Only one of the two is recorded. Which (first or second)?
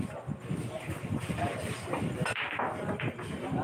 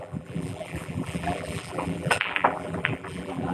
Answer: first